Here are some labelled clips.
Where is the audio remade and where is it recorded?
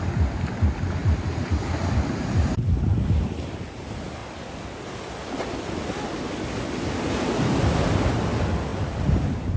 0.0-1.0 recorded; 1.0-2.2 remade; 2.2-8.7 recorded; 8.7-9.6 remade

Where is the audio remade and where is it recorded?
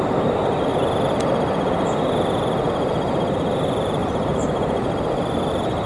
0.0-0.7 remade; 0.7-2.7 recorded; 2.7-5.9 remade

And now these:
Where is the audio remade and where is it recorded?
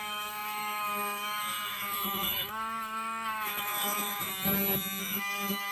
0.0-4.3 remade; 4.3-5.0 recorded; 5.0-5.7 remade